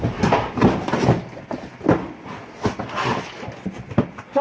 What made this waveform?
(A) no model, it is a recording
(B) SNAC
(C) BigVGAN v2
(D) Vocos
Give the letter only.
A